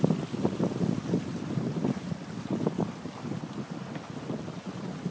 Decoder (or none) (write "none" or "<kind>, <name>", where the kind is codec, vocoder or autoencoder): none